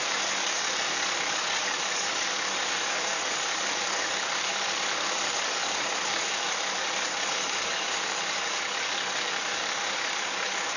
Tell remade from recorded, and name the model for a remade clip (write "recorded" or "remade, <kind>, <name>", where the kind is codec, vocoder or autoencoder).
remade, codec, DAC